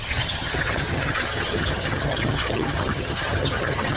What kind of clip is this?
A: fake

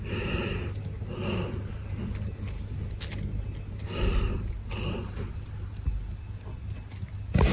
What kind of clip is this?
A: real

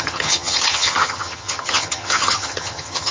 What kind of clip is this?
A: fake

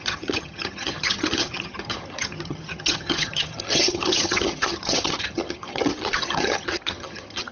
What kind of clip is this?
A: fake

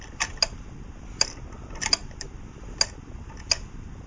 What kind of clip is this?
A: real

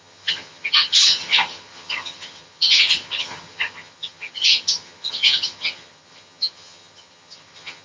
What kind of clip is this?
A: fake